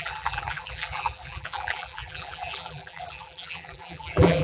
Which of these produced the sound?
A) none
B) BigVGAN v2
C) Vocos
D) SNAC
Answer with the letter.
B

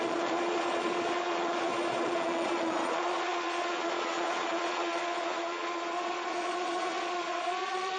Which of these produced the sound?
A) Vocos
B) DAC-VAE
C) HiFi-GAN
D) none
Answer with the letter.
A